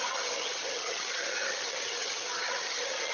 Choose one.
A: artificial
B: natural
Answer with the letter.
A